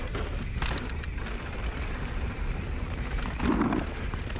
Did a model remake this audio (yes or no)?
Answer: no